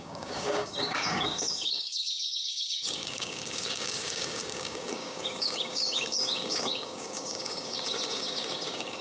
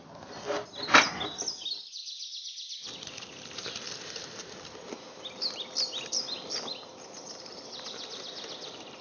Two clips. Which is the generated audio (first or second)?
first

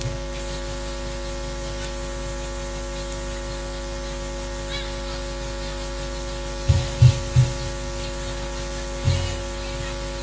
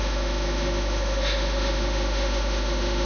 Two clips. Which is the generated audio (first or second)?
second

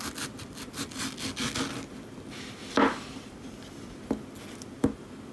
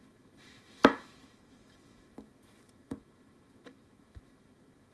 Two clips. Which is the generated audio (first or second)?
second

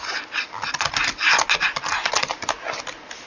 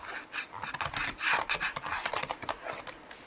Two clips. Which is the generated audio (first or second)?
second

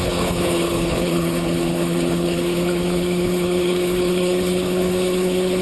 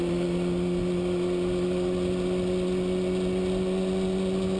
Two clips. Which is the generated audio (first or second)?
first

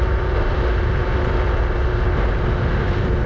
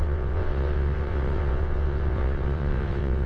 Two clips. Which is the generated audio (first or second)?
second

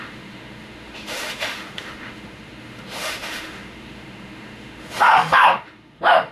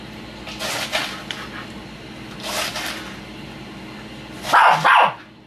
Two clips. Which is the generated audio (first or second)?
first